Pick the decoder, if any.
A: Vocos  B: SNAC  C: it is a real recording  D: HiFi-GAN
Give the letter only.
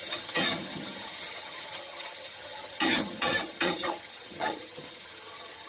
D